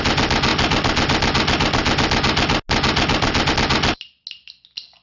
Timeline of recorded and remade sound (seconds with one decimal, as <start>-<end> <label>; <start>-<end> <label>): 0.0-5.0 recorded